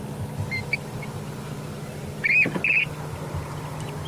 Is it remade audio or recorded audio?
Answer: recorded